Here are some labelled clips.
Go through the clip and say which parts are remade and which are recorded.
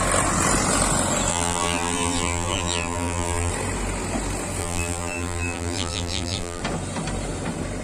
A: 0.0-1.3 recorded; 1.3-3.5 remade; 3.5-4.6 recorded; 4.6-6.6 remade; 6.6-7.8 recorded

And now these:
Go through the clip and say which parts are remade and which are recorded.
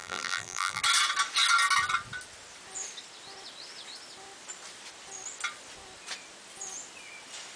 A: 0.0-0.8 remade; 0.8-7.6 recorded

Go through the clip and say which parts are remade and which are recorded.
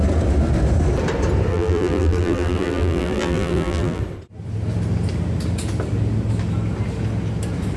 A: 0.0-1.5 recorded; 1.5-4.0 remade; 4.0-7.8 recorded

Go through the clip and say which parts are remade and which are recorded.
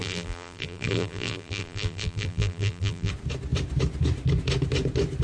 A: 0.0-3.1 remade; 3.1-5.2 recorded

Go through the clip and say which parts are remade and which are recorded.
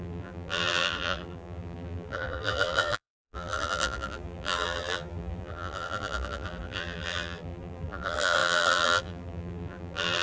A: 0.0-10.2 remade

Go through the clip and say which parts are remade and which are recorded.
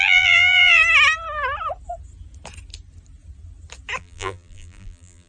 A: 0.0-0.8 remade; 0.8-4.0 recorded; 4.0-5.3 remade